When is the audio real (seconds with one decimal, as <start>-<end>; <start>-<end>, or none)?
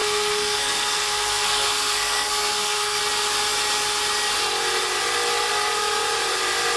3.0-6.8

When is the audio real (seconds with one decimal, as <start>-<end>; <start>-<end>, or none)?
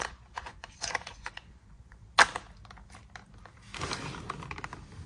2.0-5.1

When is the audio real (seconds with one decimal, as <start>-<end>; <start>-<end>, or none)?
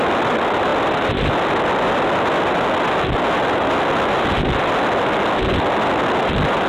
0.0-6.7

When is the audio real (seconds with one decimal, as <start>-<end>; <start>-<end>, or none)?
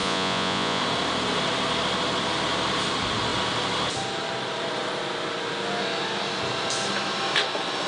0.8-7.9